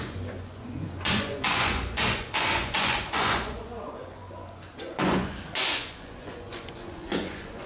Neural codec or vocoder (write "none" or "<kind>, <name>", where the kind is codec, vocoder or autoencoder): vocoder, Vocos